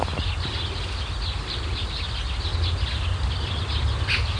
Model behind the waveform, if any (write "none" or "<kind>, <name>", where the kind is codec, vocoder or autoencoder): none